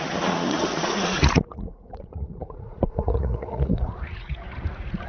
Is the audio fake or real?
fake